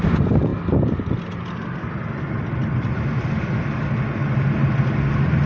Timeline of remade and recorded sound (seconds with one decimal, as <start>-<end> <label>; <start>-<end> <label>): 0.0-2.6 recorded; 2.6-3.2 remade; 3.2-5.5 recorded